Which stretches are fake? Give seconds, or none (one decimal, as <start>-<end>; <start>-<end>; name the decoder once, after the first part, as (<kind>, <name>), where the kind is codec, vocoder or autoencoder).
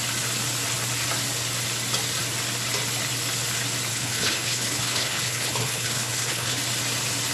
3.9-6.6 (codec, HILCodec)